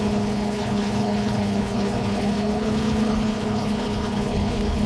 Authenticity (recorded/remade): remade